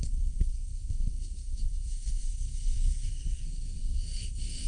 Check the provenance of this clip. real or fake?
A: fake